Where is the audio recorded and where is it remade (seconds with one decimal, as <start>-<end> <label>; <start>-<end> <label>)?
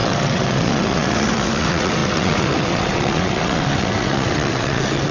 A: 0.0-5.1 remade